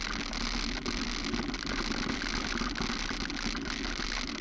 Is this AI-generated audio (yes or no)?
no